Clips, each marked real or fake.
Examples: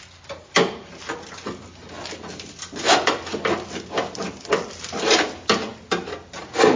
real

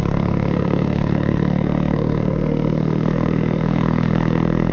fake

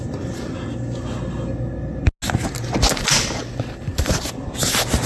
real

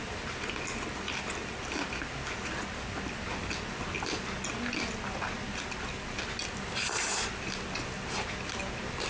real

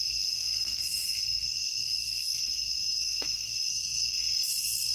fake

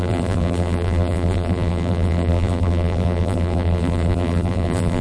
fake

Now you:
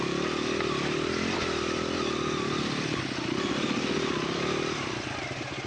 real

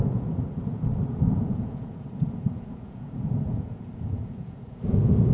fake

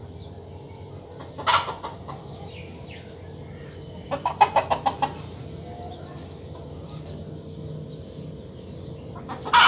real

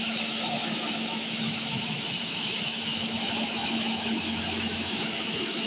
fake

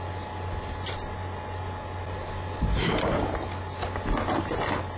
real